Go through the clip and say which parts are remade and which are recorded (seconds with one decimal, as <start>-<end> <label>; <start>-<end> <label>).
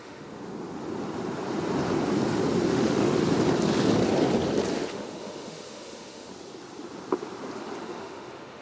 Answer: 0.0-0.5 remade; 0.5-2.7 recorded; 2.7-3.2 remade; 3.2-4.7 recorded; 4.7-6.3 remade; 6.3-7.8 recorded; 7.8-8.6 remade